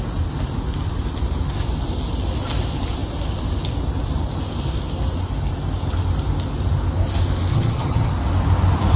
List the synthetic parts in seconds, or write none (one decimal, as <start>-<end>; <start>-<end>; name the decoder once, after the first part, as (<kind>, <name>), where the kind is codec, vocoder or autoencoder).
7.5-8.1 (vocoder, HiFi-GAN)